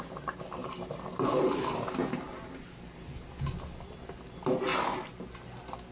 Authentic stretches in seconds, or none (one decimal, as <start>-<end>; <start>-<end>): 0.0-0.6; 1.4-4.7; 5.3-5.9